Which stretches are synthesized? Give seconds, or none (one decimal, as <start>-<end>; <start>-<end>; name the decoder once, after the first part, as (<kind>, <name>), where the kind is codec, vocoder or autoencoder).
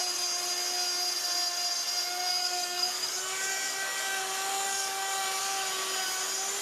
2.3-5.4 (codec, DAC)